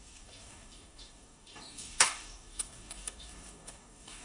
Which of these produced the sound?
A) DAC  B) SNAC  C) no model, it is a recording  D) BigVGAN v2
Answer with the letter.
A